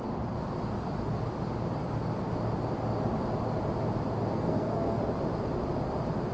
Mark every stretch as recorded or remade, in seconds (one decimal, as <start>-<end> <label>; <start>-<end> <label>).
0.0-4.3 recorded; 4.3-5.0 remade; 5.0-6.3 recorded